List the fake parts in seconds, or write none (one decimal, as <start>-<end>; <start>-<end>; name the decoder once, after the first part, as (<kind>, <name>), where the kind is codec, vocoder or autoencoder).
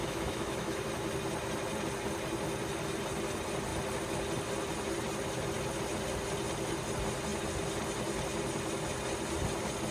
0.0-0.8 (autoencoder, DAC-VAE)